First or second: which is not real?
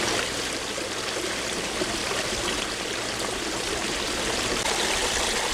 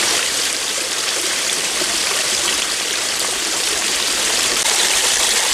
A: second